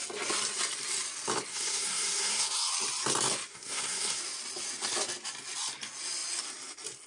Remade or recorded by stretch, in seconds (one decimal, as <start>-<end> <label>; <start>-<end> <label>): 0.0-1.5 recorded; 1.5-2.7 remade; 2.7-3.5 recorded; 3.5-4.2 remade; 4.2-7.1 recorded